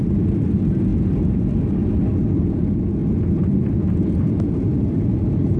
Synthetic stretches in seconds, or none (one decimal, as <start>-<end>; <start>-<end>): 0.0-0.9; 2.4-3.0; 3.9-5.6